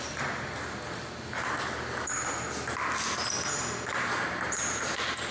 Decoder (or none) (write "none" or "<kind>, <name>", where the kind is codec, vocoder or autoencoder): none